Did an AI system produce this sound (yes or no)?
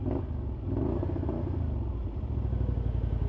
no